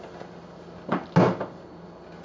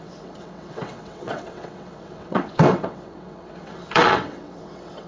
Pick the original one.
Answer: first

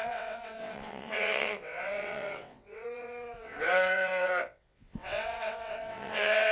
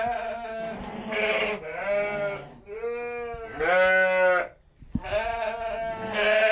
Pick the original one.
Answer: second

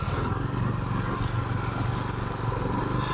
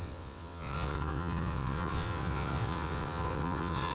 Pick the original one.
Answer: first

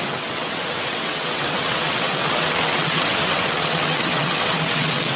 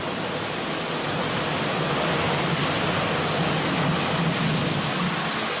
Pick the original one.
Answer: second